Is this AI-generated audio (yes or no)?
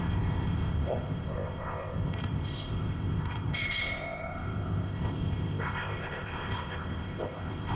yes